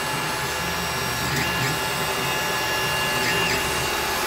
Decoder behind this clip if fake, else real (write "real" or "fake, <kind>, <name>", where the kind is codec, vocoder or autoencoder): real